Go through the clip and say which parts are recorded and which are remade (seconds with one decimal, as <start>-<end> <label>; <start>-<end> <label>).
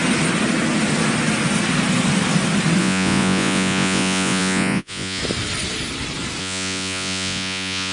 0.0-2.8 recorded; 2.8-5.2 remade; 5.2-6.4 recorded; 6.4-7.9 remade